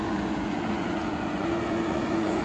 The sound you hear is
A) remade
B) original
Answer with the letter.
A